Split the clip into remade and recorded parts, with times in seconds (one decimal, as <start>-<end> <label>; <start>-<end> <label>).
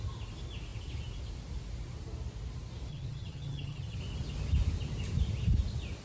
0.0-2.9 recorded; 2.9-4.0 remade; 4.0-6.0 recorded